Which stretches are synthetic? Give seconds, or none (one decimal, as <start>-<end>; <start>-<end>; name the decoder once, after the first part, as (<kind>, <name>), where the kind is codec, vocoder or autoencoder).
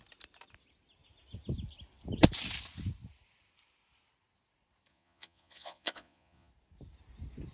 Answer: 4.9-6.5 (vocoder, Vocos)